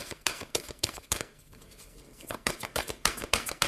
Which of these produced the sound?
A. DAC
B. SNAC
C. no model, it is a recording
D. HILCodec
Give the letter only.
B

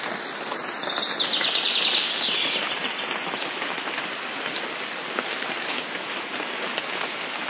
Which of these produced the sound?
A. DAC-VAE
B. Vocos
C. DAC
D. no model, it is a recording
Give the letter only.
D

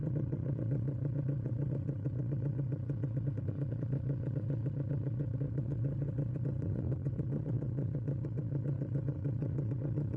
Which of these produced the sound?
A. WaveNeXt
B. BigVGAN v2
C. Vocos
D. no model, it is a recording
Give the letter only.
C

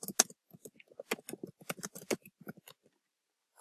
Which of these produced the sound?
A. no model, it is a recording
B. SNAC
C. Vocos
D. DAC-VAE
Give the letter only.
A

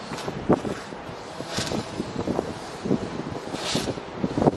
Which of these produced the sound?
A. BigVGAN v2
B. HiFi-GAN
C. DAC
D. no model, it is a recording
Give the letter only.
A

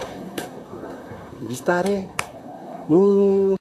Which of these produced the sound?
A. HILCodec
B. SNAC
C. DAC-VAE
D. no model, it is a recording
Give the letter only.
B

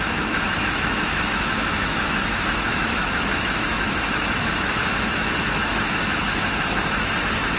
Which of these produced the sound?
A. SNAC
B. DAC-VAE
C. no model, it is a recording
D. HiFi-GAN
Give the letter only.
B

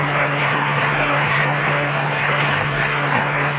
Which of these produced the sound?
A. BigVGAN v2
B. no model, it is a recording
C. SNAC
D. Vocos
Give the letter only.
C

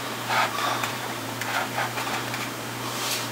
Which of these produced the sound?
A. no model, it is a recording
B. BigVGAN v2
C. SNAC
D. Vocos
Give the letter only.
B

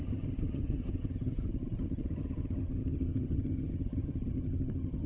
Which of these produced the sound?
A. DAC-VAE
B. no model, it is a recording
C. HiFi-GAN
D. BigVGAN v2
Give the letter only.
C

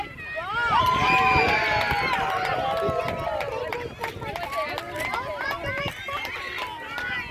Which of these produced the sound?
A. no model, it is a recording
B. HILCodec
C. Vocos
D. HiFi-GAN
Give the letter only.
A